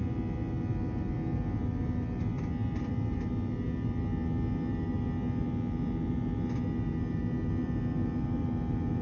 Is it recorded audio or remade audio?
recorded